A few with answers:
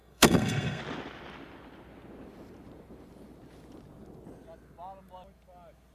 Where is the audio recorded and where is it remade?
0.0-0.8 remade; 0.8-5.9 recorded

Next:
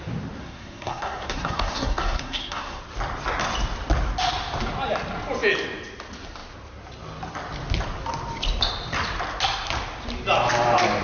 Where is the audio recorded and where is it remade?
0.0-0.4 recorded; 0.4-2.8 remade; 2.8-11.0 recorded

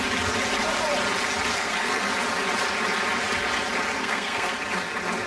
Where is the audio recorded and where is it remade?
0.0-1.5 recorded; 1.5-2.1 remade; 2.1-4.0 recorded; 4.0-4.5 remade; 4.5-5.3 recorded

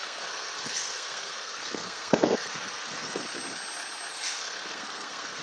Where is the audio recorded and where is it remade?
0.0-3.2 remade; 3.2-4.1 recorded; 4.1-5.4 remade